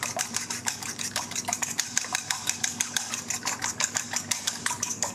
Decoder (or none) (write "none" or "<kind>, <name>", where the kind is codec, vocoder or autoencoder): codec, DAC